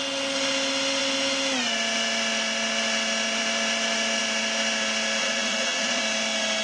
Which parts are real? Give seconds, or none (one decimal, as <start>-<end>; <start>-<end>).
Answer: 0.0-5.2; 6.0-6.6